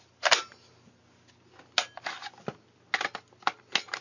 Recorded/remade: recorded